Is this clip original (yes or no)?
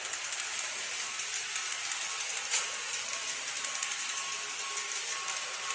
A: yes